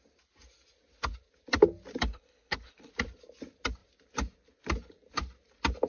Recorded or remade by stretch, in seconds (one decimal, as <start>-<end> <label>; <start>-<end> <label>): 0.0-2.1 recorded; 2.1-2.9 remade; 2.9-5.9 recorded